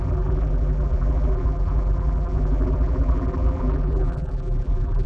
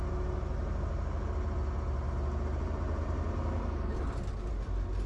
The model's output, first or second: first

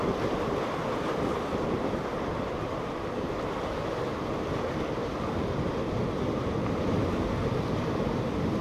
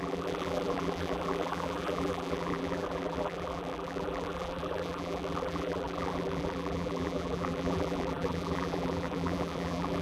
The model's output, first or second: second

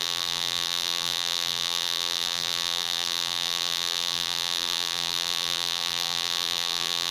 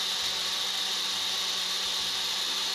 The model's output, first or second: first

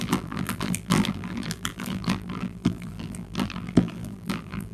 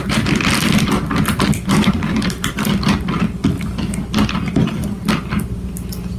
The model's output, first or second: first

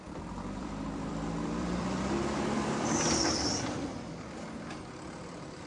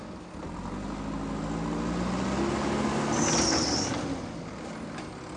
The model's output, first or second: first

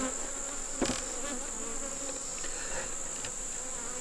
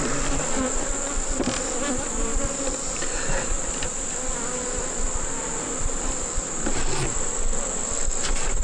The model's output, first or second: second